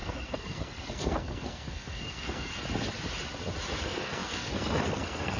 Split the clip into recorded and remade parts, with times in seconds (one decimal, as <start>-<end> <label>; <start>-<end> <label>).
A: 0.0-2.5 remade; 2.5-3.8 recorded; 3.8-5.4 remade